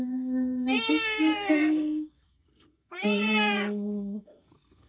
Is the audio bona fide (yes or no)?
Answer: no